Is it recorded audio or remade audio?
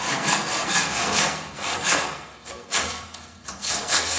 remade